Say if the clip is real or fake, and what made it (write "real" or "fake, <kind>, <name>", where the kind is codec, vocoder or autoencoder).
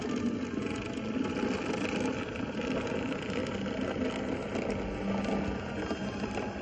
real